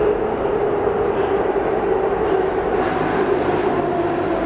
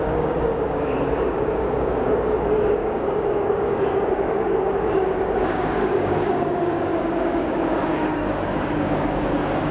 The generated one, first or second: second